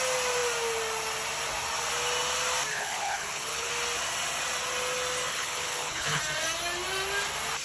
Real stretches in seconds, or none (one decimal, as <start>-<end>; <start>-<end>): 0.0-2.7; 3.7-5.3; 6.2-7.6